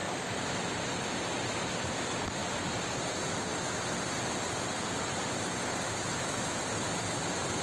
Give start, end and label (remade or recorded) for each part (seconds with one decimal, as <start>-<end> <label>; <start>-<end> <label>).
0.0-7.6 remade